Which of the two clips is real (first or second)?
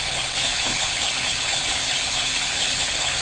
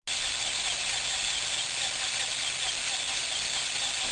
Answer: second